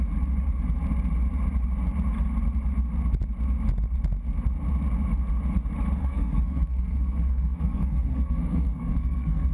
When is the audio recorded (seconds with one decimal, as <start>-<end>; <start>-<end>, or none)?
0.0-6.0